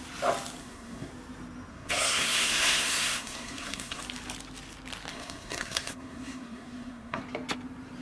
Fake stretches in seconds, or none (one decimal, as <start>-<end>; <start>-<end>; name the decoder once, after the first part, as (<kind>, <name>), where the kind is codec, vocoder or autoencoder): 0.6-1.1 (codec, SNAC); 1.7-4.0; 5.1-7.2